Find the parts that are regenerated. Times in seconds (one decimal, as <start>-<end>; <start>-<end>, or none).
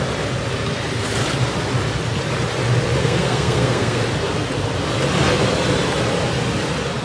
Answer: 3.0-4.0